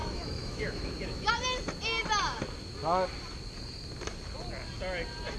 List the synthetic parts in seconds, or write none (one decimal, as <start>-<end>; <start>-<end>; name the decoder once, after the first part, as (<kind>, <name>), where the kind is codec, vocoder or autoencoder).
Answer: 0.0-1.3 (autoencoder, DAC-VAE)